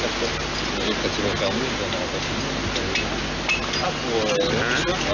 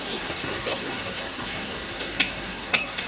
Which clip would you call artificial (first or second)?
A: second